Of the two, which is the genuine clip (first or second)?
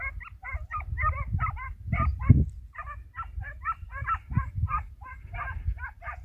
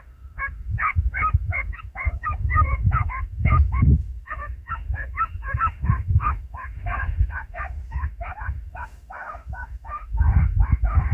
first